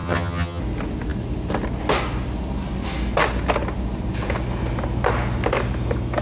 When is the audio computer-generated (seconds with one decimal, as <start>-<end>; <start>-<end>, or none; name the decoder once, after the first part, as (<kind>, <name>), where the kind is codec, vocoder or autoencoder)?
0.0-0.6 (vocoder, HiFi-GAN)